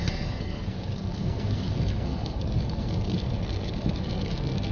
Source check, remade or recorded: remade